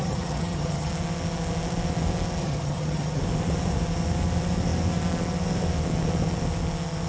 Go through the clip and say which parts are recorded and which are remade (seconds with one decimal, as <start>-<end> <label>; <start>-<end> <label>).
0.0-0.9 remade; 0.9-2.4 recorded; 2.4-3.2 remade; 3.2-7.1 recorded